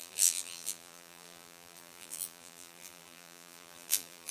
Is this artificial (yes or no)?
yes